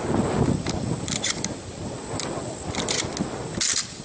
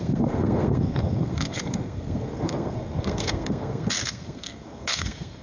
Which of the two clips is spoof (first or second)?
second